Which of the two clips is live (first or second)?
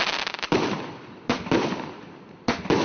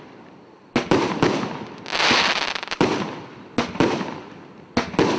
second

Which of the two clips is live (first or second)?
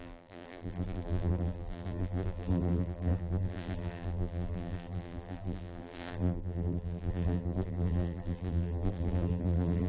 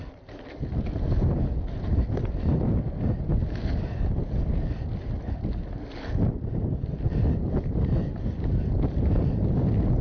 second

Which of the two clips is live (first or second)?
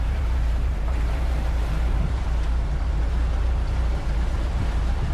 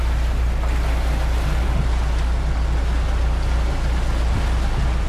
second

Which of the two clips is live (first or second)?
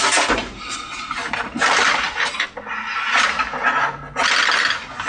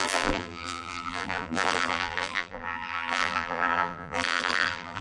first